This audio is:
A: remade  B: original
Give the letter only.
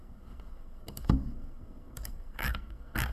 A